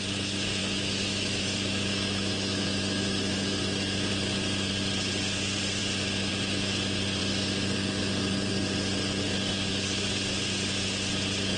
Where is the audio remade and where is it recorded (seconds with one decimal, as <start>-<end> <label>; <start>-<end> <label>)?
0.0-0.6 recorded; 0.6-4.1 remade; 4.1-11.6 recorded